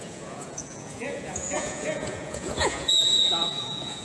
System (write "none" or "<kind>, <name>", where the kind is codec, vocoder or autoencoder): vocoder, Vocos